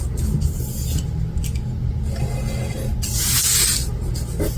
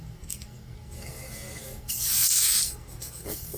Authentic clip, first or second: first